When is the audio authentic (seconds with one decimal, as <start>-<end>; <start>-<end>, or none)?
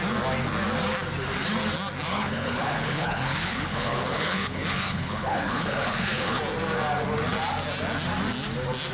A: 0.0-2.1; 6.4-8.9